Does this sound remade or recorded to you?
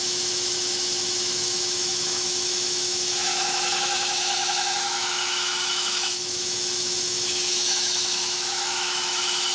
remade